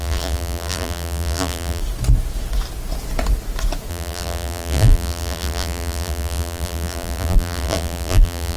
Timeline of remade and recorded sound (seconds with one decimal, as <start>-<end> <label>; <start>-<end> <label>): 0.0-1.8 remade; 1.8-3.9 recorded; 3.9-8.6 remade